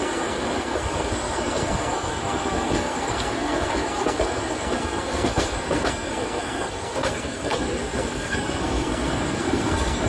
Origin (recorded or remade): remade